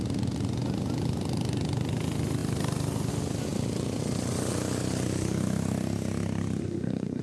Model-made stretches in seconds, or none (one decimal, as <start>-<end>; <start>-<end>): 6.6-7.2